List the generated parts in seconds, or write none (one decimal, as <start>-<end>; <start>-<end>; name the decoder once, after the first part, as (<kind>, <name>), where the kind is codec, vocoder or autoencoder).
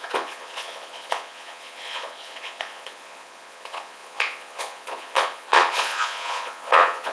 0.0-7.1 (vocoder, Vocos)